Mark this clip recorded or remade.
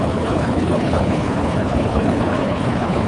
remade